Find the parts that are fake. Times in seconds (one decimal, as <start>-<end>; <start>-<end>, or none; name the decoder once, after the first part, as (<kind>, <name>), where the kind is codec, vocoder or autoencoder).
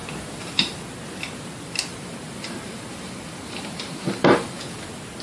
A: 1.9-4.6 (vocoder, BigVGAN v2)